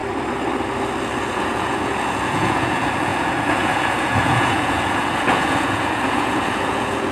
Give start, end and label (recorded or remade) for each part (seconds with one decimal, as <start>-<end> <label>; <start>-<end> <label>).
0.0-1.2 recorded; 1.2-7.1 remade